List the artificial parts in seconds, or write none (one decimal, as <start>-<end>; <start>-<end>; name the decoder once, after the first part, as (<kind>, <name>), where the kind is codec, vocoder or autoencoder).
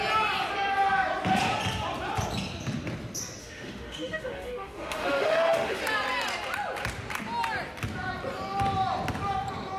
3.4-5.8 (autoencoder, DAC-VAE)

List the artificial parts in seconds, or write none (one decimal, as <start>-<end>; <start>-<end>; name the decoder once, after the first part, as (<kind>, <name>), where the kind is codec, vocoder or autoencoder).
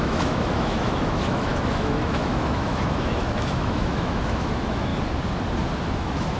0.0-4.9 (autoencoder, DAC-VAE); 5.9-6.4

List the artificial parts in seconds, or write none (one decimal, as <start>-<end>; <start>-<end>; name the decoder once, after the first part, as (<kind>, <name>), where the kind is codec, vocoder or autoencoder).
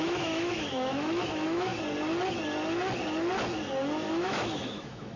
0.0-1.7 (autoencoder, DAC-VAE); 4.1-5.2